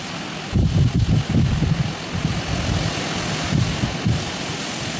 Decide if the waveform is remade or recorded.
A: recorded